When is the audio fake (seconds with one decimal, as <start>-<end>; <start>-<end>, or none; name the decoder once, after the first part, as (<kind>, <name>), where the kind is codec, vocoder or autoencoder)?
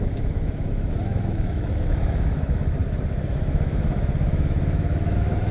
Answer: 0.0-2.8 (autoencoder, DAC-VAE); 3.3-5.5